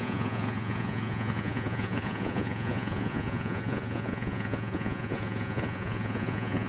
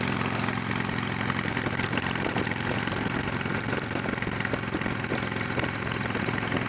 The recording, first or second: second